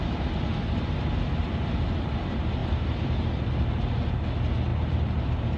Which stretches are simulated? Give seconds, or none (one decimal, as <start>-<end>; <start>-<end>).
2.6-3.4; 4.7-5.6